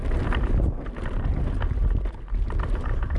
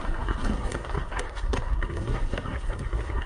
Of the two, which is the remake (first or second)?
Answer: second